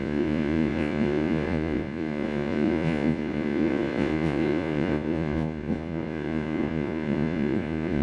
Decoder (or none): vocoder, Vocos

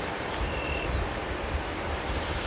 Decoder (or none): none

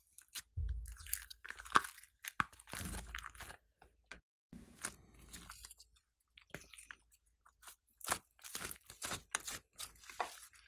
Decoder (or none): none